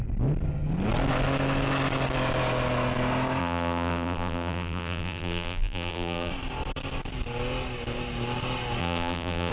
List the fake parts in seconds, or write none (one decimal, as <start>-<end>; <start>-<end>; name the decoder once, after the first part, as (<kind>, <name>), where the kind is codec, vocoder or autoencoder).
3.4-6.3 (vocoder, BigVGAN v2); 8.8-9.5

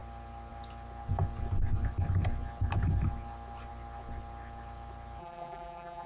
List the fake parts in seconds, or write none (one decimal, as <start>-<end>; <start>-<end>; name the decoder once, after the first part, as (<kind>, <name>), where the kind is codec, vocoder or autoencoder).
5.2-6.1 (vocoder, BigVGAN v2)

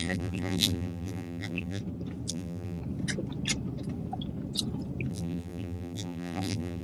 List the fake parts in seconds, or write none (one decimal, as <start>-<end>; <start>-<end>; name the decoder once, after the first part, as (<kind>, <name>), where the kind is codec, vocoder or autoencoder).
0.0-1.8 (vocoder, BigVGAN v2); 2.3-2.8; 5.1-6.8